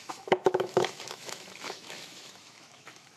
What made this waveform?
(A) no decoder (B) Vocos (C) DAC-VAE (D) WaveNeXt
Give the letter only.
C